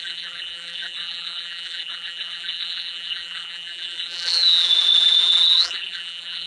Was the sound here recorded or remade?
remade